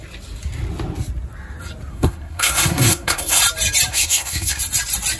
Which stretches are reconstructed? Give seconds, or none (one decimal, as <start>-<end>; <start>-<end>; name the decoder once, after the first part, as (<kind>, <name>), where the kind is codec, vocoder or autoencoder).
1.9-3.4 (codec, SNAC); 3.9-4.6